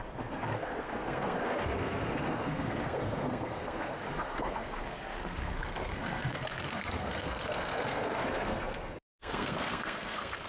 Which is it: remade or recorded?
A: remade